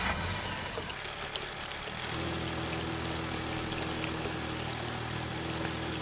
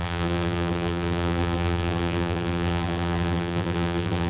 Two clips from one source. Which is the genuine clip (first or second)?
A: first